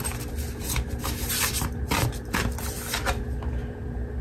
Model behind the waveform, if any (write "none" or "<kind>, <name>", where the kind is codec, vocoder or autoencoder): none